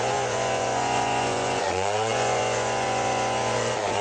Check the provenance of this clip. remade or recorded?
remade